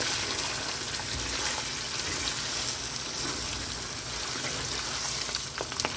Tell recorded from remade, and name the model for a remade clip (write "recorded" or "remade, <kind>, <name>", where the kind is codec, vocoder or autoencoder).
recorded